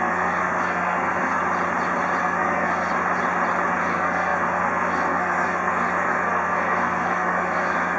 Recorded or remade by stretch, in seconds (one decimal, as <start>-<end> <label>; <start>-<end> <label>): 0.0-1.4 remade; 1.4-2.2 recorded; 2.2-2.9 remade; 2.9-3.8 recorded; 3.8-8.0 remade